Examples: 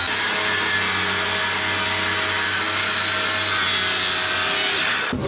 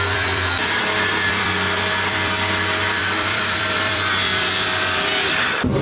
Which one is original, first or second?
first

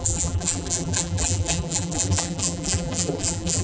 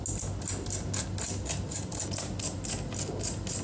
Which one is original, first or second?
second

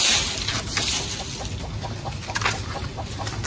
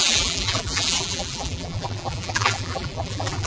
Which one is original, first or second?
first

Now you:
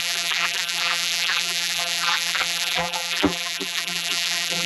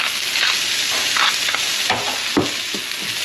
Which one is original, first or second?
second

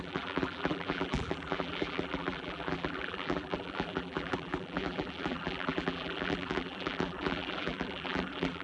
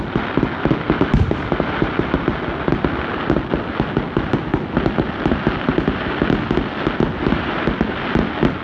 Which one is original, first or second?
second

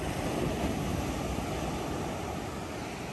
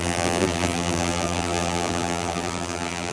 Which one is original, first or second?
first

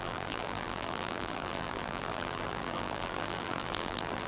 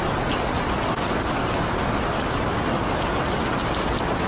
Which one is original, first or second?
second